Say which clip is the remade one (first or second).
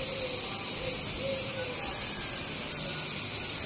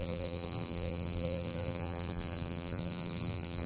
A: second